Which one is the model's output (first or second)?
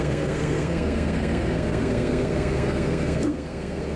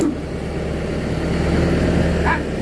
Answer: first